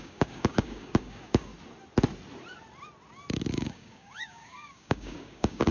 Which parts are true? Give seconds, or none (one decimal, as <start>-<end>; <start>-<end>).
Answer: 1.5-3.5